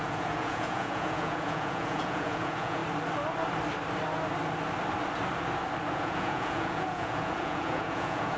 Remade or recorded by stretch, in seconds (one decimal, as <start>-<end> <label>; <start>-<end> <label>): 0.0-2.8 remade; 2.8-5.9 recorded; 5.9-8.4 remade